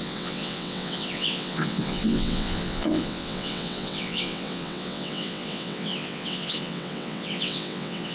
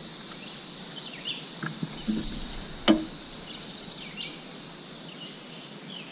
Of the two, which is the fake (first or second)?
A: first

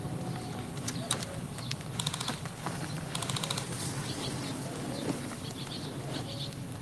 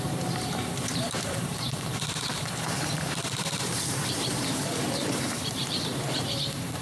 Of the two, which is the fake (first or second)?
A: second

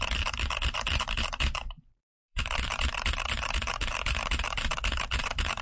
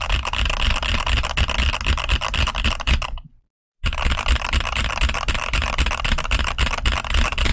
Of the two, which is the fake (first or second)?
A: first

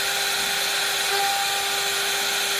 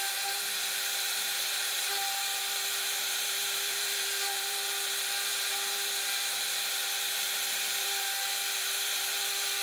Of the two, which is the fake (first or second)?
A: second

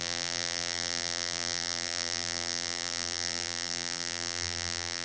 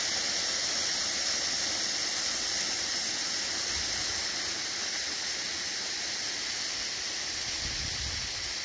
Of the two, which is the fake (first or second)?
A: first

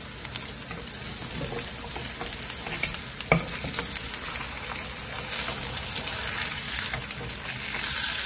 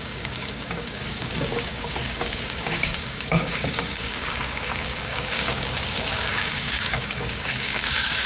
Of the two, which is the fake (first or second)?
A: second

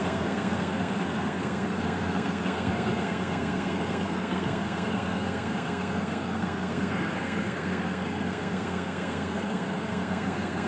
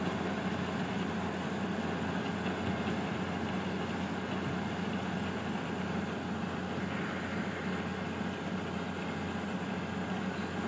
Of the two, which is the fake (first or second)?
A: first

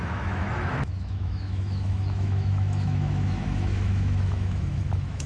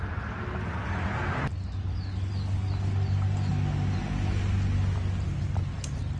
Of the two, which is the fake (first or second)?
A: first